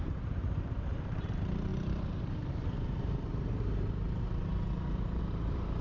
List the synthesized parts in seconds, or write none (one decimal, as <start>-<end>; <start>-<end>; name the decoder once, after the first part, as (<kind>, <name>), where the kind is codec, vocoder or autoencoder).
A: 0.0-5.8 (vocoder, BigVGAN v2)